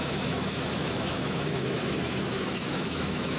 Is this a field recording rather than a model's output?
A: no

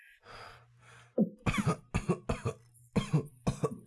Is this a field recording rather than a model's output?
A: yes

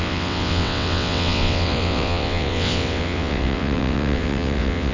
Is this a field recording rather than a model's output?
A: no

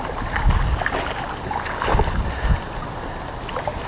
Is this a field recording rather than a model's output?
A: yes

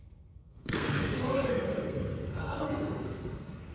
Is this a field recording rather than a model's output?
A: no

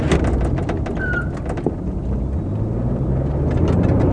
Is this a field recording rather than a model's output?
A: yes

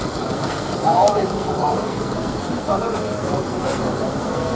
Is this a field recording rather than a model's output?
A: no